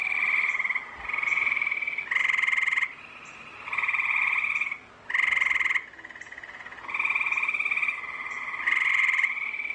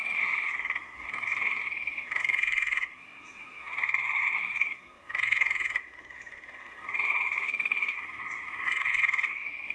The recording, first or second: first